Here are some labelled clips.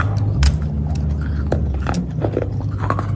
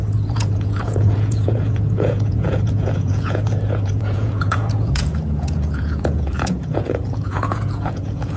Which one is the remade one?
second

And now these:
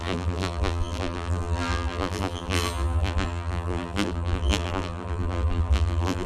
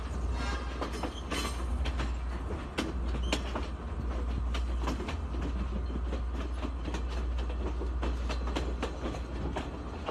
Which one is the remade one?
first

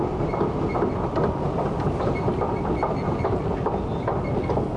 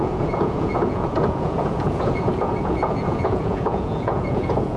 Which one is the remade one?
second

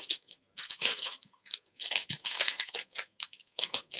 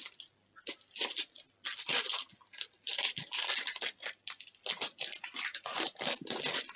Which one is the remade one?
first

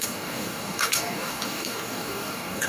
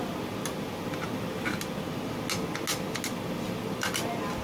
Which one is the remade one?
first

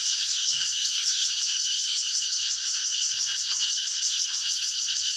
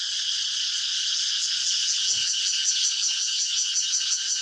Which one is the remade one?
first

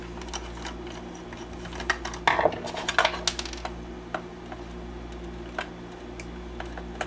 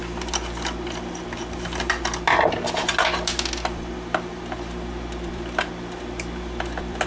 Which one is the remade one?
second